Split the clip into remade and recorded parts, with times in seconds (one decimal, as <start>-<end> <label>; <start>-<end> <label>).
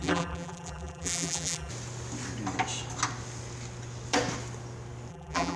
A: 0.0-1.7 remade; 1.7-5.1 recorded; 5.1-5.6 remade